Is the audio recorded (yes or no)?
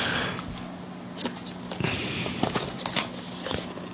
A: yes